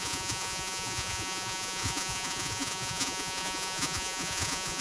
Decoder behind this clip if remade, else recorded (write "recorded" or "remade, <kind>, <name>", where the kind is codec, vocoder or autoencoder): remade, vocoder, Vocos